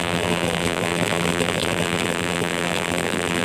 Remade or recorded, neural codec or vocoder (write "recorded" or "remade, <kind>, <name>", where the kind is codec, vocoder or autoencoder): remade, vocoder, BigVGAN v2